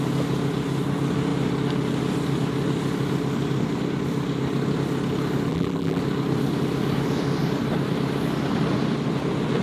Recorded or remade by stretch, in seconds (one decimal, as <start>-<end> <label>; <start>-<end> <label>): 0.0-5.5 recorded; 5.5-6.0 remade; 6.0-9.6 recorded